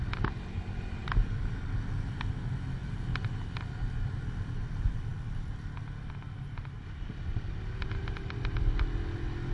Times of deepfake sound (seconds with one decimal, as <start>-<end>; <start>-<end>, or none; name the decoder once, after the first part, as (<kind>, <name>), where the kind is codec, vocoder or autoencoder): none